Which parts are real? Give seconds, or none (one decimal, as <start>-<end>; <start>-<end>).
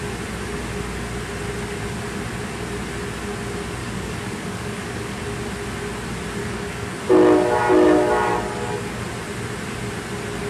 0.0-3.8; 5.2-6.4; 7.0-8.3; 9.0-10.5